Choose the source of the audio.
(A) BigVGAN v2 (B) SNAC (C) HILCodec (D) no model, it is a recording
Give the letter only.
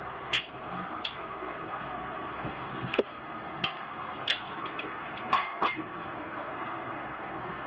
B